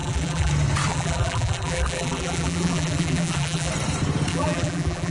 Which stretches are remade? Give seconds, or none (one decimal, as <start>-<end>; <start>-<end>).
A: 0.0-0.5; 0.9-3.7; 4.3-5.1